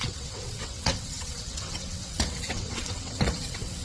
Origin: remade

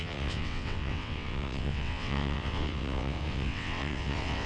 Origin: remade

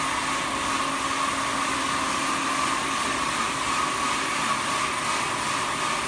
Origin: recorded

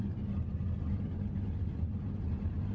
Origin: recorded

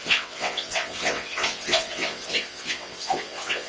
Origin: remade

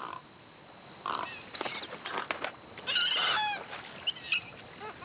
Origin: recorded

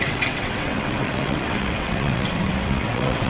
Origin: remade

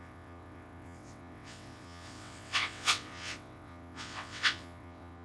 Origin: remade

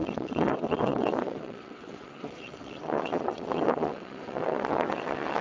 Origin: remade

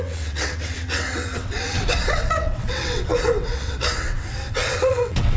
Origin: remade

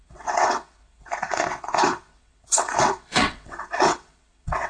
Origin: remade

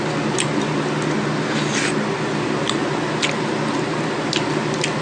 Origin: recorded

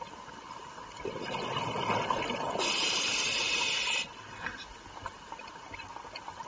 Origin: recorded